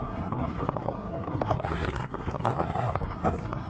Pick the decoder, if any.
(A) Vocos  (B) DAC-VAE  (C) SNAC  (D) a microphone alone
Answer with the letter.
C